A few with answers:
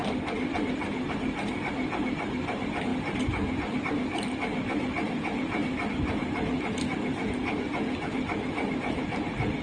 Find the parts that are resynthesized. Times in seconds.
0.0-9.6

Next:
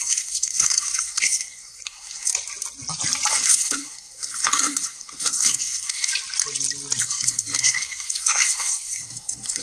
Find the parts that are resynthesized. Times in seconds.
0.0-2.3; 3.3-6.1; 7.0-9.6

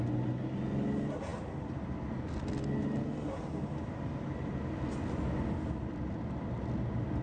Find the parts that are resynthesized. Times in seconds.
none

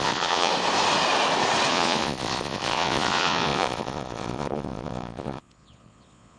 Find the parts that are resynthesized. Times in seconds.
0.0-0.5; 1.7-6.4

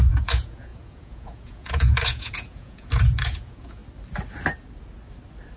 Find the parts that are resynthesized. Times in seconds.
0.0-3.8